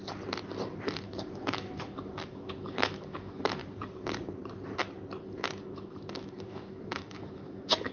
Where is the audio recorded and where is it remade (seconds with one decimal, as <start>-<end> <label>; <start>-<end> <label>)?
0.0-0.9 recorded; 0.9-3.6 remade; 3.6-5.6 recorded; 5.6-7.9 remade